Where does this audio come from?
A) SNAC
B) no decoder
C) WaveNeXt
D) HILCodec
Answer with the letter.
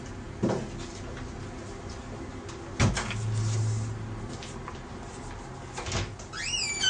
B